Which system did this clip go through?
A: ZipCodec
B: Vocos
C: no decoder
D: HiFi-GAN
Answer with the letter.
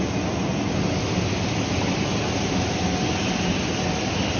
C